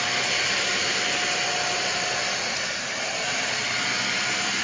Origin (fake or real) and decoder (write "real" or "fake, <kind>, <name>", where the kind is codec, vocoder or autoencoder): real